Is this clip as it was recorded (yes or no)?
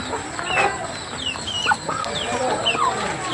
yes